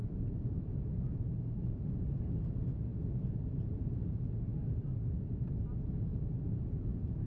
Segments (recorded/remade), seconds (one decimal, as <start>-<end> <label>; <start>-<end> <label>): 0.0-2.5 remade; 2.5-2.9 recorded; 2.9-3.9 remade; 3.9-4.5 recorded; 4.5-5.3 remade; 5.3-6.1 recorded; 6.1-7.3 remade